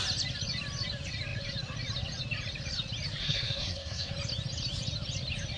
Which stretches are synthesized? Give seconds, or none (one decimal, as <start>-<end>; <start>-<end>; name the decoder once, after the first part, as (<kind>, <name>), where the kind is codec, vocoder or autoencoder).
3.2-4.1 (codec, SNAC)

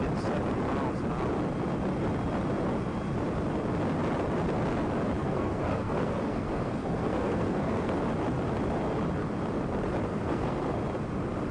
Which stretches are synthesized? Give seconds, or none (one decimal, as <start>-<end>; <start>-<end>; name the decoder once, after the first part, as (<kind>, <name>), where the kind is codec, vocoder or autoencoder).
5.2-7.9 (codec, SNAC); 10.1-10.8

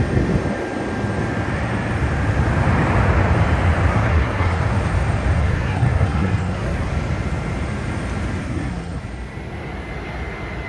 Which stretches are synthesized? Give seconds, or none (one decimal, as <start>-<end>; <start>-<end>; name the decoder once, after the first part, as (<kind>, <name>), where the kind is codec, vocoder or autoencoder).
3.9-4.6 (codec, SNAC); 5.4-6.9; 8.4-9.0